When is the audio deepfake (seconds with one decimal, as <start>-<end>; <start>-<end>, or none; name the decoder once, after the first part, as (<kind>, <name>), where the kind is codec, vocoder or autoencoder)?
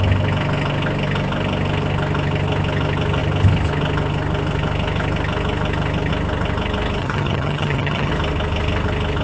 7.0-8.1 (vocoder, HiFi-GAN)